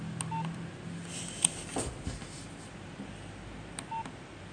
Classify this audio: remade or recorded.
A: recorded